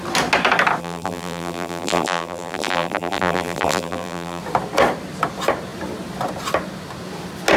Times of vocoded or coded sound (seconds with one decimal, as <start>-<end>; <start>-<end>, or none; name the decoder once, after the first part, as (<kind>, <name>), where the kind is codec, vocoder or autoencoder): 0.8-4.4 (vocoder, BigVGAN v2)